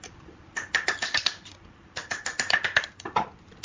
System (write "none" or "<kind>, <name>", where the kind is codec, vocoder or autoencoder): none